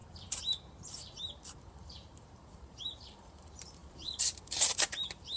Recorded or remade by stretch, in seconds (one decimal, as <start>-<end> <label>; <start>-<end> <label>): 0.0-5.4 remade